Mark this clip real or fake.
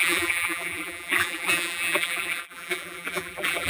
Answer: fake